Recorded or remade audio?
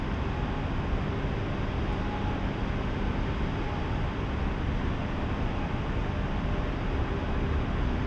recorded